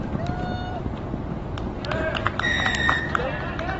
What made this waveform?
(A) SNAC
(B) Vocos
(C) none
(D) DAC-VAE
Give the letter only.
C